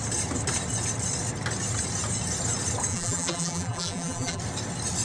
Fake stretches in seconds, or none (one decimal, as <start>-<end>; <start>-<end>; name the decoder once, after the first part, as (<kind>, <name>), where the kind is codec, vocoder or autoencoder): 2.9-4.4 (vocoder, BigVGAN v2)